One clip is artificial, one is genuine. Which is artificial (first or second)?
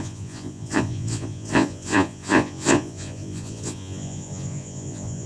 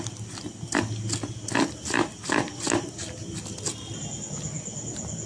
first